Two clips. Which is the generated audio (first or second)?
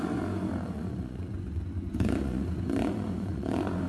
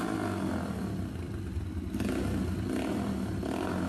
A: first